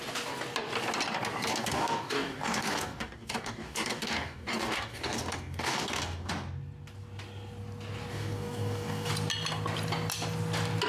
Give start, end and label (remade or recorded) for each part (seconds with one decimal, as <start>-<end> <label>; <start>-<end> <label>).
0.0-1.5 recorded; 1.5-6.3 remade; 6.3-8.1 recorded; 8.1-9.1 remade; 9.1-10.9 recorded